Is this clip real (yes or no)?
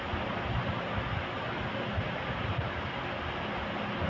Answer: yes